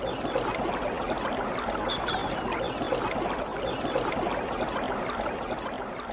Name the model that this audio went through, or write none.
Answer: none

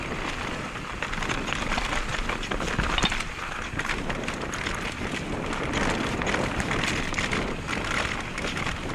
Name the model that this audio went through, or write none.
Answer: none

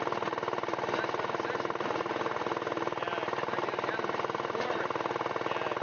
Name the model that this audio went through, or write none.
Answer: none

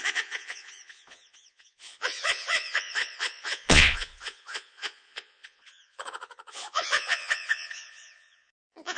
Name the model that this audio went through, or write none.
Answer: vocoder, Vocos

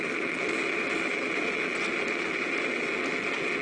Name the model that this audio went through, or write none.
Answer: none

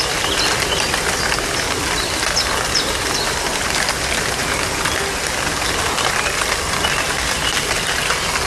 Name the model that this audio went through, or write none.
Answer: none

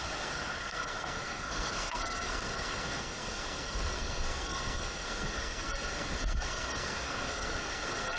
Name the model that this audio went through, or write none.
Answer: codec, SNAC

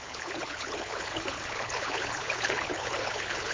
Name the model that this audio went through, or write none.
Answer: codec, HILCodec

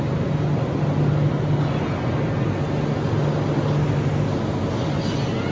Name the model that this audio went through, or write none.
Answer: none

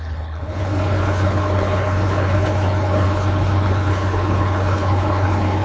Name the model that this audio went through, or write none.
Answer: codec, HILCodec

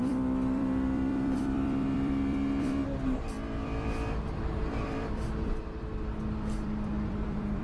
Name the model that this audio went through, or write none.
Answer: vocoder, BigVGAN v2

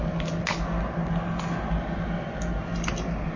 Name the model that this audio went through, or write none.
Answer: none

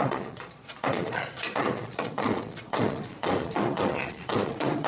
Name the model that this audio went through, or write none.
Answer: vocoder, Vocos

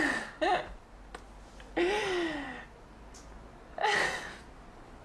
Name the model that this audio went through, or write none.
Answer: none